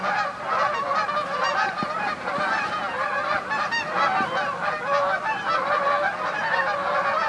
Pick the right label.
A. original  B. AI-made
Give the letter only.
A